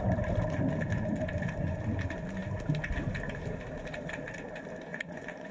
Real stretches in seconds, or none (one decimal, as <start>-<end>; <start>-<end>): 0.0-4.9